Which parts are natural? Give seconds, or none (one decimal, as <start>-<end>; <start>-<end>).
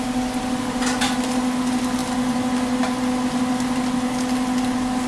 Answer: 0.0-5.1